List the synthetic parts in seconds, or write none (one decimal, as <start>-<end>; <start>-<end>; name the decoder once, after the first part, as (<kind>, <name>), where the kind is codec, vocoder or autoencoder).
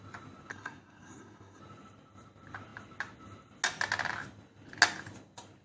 0.5-1.6 (codec, SNAC)